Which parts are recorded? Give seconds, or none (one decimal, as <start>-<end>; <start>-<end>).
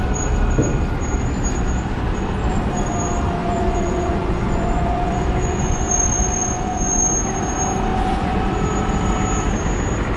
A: 0.0-3.4; 7.1-7.9; 8.4-10.2